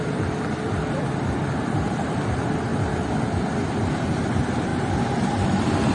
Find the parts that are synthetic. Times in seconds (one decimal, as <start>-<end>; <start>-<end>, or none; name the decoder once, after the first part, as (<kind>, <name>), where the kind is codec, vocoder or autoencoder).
none